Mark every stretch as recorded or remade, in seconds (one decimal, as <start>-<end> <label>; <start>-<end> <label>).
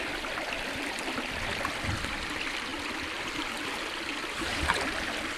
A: 0.0-5.4 recorded